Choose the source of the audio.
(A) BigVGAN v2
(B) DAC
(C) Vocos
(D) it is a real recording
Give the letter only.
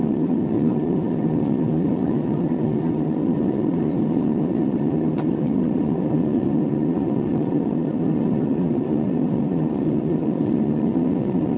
C